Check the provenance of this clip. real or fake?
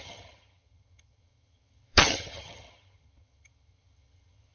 fake